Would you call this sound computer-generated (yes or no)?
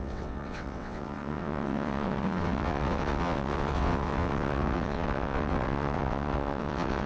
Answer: yes